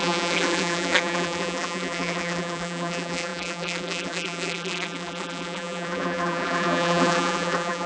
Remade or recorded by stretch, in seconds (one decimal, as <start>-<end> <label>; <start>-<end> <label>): 0.0-7.9 remade